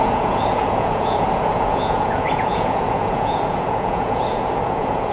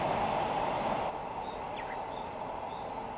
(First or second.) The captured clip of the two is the second